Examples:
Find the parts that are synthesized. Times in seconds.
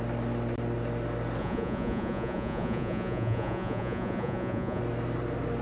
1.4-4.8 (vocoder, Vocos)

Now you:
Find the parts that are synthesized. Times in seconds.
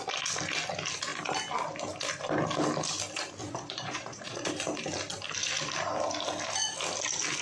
3.4-4.5 (vocoder, Vocos)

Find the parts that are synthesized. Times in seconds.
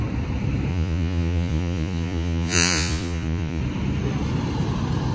0.7-3.6 (vocoder, Vocos)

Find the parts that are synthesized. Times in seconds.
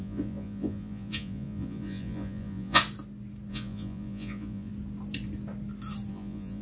0.0-2.8 (vocoder, Vocos); 3.5-4.7; 6.1-6.6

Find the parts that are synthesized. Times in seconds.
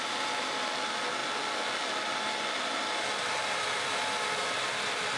none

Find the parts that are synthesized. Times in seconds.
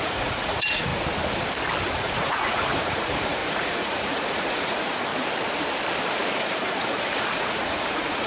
0.0-0.9 (vocoder, Vocos); 1.9-5.1; 6.4-8.3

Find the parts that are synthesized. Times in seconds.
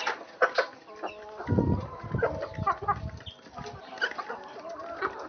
none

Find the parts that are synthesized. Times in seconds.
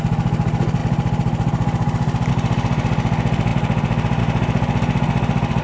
none